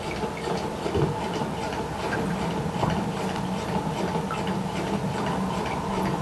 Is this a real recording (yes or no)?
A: yes